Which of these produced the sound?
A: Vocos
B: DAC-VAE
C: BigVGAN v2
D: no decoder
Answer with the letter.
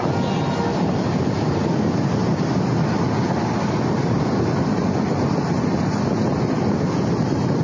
D